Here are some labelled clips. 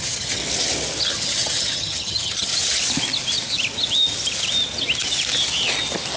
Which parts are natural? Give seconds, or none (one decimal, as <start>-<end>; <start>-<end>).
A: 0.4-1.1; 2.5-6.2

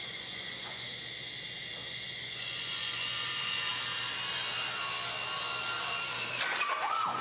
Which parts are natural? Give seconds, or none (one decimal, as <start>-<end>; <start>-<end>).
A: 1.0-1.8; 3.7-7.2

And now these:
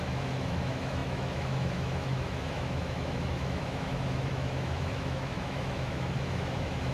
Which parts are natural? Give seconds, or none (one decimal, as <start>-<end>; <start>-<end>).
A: none